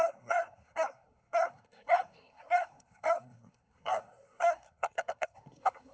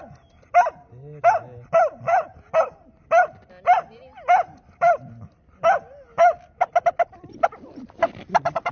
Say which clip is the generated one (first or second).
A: first